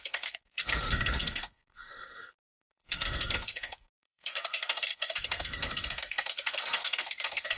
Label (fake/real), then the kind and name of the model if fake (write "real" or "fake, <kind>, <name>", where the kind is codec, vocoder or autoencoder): fake, codec, SNAC